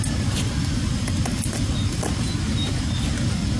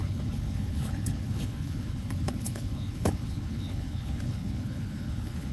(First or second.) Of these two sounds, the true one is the first